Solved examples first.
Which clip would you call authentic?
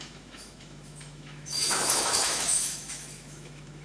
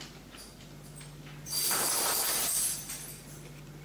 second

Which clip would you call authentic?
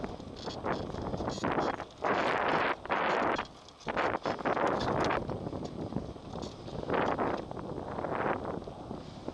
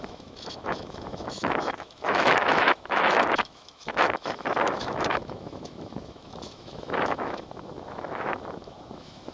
first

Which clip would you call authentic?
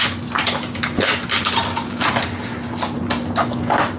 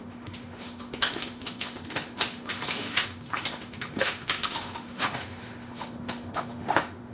first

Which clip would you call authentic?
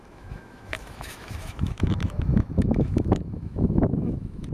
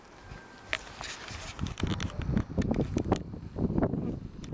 second